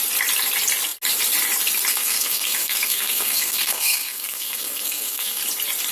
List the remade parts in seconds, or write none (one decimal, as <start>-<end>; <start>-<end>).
1.9-5.4